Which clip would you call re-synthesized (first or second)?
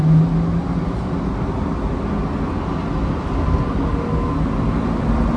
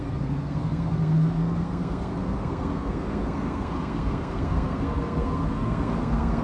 second